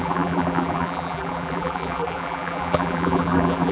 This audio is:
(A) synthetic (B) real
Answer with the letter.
A